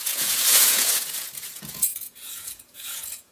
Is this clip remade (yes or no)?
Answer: yes